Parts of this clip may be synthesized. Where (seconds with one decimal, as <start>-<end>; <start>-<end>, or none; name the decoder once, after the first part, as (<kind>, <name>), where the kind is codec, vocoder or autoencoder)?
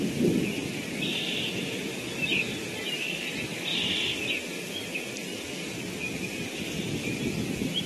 3.7-4.3 (vocoder, BigVGAN v2)